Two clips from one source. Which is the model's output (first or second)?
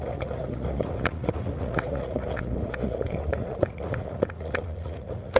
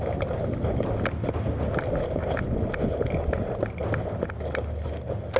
first